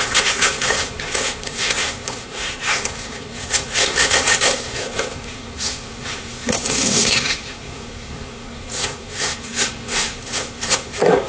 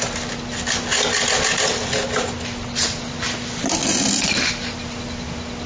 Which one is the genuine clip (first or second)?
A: second